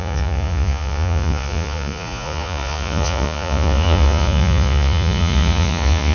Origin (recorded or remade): remade